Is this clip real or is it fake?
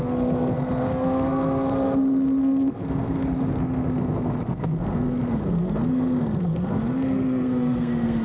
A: fake